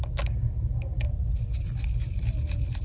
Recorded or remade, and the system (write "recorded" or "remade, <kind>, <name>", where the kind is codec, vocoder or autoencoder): recorded